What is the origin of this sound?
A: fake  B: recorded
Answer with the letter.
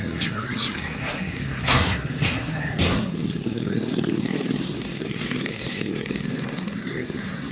A